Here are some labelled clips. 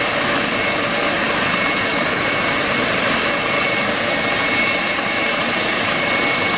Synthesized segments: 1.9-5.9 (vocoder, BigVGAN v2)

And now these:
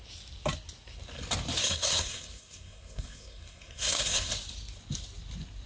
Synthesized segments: 1.6-4.3 (codec, SNAC)

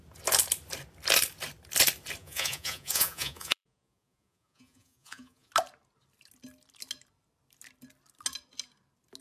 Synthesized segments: 2.2-5.5 (vocoder, Vocos)

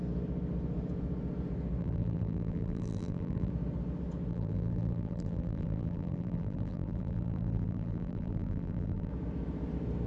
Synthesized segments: 1.8-3.5 (vocoder, BigVGAN v2); 4.3-9.1

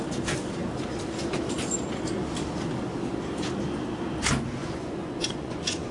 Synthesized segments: 4.6-5.9 (vocoder, Vocos)